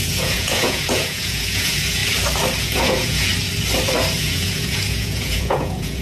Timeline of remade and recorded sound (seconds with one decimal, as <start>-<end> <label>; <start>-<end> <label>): 0.0-2.0 remade; 2.0-2.6 recorded; 2.6-3.3 remade; 3.3-4.2 recorded; 4.2-6.0 remade